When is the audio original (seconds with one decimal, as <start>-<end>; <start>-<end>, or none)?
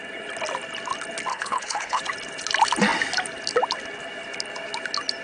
0.0-1.3; 2.0-5.2